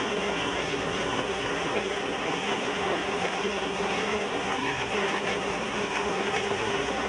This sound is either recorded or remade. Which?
remade